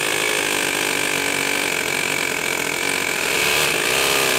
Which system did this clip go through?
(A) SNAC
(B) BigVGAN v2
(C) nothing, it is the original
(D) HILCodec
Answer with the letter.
C